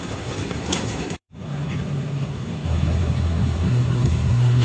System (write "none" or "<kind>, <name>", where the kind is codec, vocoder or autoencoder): codec, SNAC